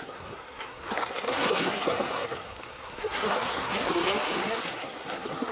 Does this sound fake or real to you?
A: fake